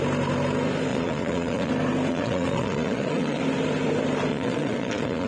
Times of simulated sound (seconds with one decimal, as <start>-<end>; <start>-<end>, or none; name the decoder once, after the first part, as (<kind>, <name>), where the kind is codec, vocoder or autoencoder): 0.9-1.7 (vocoder, Vocos); 2.1-3.4; 4.3-5.3